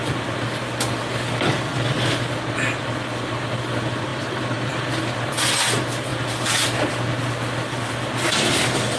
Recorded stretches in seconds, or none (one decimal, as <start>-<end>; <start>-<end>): 0.0-4.1; 5.0-9.0